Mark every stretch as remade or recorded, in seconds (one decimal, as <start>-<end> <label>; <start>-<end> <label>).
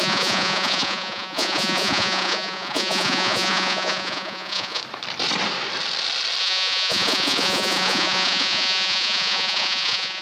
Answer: 0.0-4.8 remade; 4.8-6.4 recorded; 6.4-10.2 remade